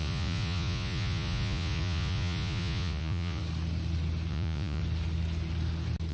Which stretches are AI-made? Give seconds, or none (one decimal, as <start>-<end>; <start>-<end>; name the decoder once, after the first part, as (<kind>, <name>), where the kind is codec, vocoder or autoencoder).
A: 0.0-3.4 (vocoder, Vocos); 4.3-4.8